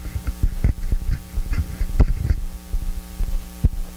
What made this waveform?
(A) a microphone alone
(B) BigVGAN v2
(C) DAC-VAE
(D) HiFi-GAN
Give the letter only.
A